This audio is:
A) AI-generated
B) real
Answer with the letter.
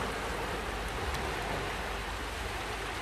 B